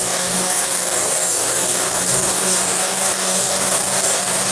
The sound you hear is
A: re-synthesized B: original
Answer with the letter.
A